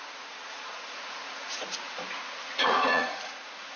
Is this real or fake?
fake